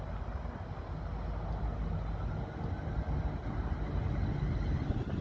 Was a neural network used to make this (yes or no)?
no